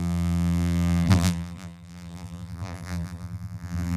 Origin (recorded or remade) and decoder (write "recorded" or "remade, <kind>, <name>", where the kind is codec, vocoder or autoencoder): remade, vocoder, BigVGAN v2